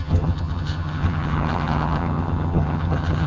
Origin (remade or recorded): remade